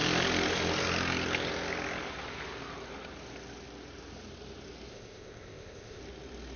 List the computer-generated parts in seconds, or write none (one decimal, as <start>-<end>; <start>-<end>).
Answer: 4.9-6.0